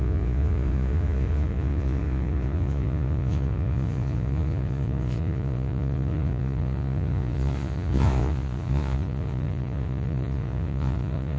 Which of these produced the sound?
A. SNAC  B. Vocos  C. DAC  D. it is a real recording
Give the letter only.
B